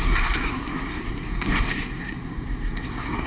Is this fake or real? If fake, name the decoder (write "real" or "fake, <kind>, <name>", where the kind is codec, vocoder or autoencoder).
fake, codec, SNAC